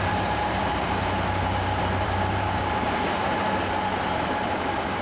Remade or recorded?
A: remade